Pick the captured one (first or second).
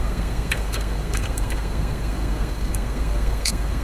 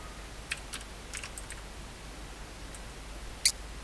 second